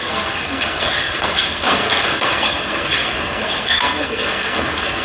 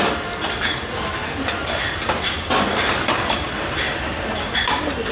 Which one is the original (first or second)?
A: second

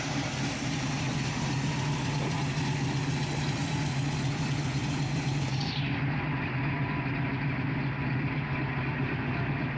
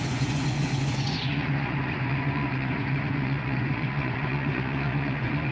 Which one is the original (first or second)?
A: first